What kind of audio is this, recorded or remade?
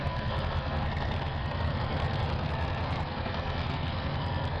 remade